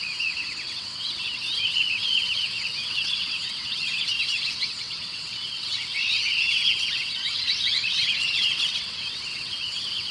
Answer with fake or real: fake